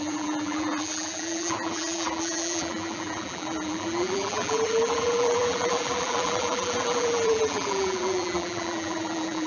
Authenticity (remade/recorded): remade